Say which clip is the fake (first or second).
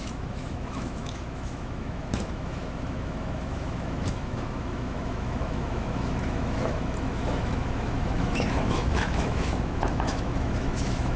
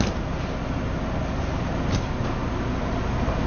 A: first